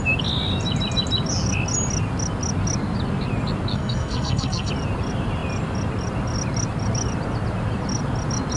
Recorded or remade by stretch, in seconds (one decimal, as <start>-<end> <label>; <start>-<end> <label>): 0.0-3.7 recorded; 3.7-4.7 remade; 4.7-8.6 recorded